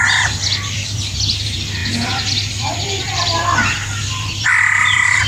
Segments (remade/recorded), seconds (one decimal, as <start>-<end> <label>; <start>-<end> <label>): 0.0-5.3 remade